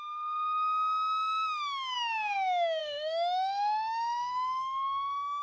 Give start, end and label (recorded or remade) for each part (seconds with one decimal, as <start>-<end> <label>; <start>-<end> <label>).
0.0-5.4 remade